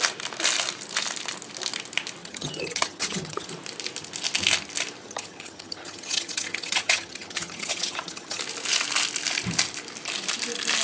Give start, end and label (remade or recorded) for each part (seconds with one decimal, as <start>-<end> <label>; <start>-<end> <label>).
0.0-2.2 recorded; 2.2-3.5 remade; 3.5-5.0 recorded; 5.0-8.4 remade; 8.4-10.8 recorded